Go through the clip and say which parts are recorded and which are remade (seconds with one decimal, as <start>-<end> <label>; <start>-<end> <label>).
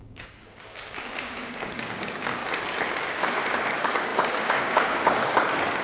0.0-2.4 remade; 2.4-3.1 recorded; 3.1-5.8 remade